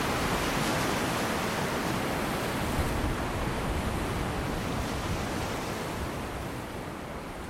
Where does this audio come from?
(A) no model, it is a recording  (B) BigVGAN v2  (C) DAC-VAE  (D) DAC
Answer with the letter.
A